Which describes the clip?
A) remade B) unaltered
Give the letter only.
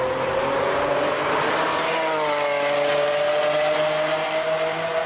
B